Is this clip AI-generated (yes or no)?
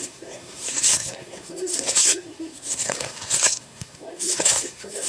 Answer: yes